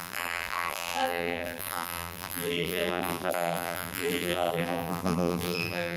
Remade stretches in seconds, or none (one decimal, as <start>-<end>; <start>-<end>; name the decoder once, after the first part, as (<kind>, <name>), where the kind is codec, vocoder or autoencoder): 0.0-6.0 (vocoder, BigVGAN v2)